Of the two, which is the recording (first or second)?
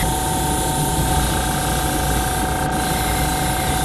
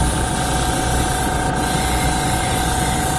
first